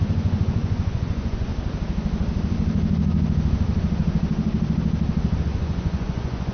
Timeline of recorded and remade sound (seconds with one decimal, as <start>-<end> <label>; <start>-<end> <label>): 0.0-1.5 remade; 1.5-5.4 recorded; 5.4-6.5 remade